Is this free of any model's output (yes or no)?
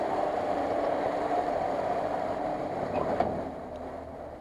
no